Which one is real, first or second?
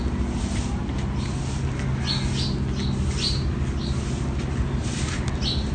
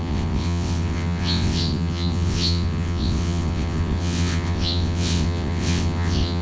first